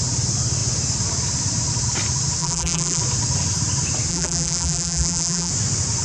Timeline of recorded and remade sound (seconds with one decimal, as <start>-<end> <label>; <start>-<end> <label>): 0.0-2.4 recorded; 2.4-3.0 remade; 3.0-4.1 recorded; 4.1-5.5 remade; 5.5-6.0 recorded